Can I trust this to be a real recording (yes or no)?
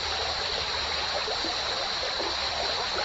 no